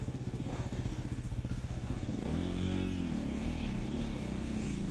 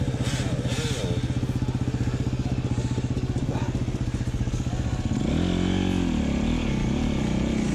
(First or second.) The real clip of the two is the second